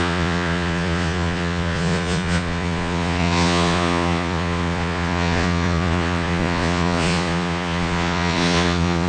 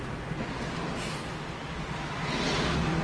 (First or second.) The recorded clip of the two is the second